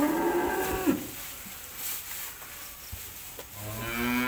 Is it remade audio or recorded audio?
recorded